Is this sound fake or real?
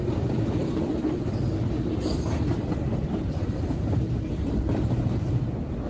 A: real